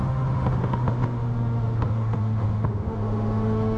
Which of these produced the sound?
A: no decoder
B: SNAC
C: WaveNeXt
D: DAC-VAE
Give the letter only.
D